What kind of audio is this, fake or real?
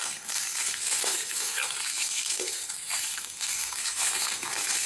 fake